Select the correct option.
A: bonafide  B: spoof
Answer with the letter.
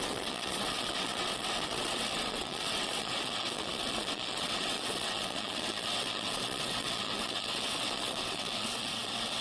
B